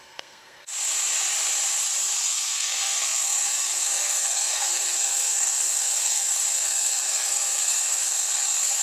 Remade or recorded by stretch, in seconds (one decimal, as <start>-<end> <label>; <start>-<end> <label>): 0.0-0.7 remade; 0.7-2.2 recorded; 2.2-8.8 remade